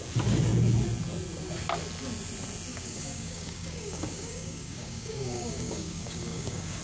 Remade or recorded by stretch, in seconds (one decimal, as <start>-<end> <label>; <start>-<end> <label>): 0.0-2.7 recorded; 2.7-6.8 remade